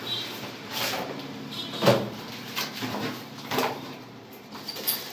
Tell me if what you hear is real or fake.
fake